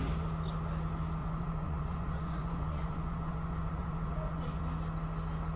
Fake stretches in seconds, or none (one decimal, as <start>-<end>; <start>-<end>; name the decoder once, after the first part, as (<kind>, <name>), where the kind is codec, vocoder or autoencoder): 1.2-4.6 (vocoder, Vocos)